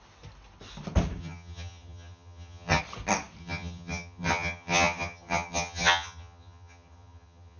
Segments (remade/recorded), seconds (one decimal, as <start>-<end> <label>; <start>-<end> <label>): 0.0-1.2 recorded; 1.2-2.8 remade; 2.8-3.4 recorded; 3.4-7.6 remade

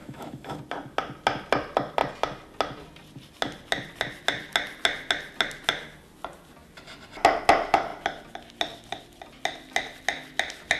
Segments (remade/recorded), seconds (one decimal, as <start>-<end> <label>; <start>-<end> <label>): 0.0-0.6 remade; 0.6-10.8 recorded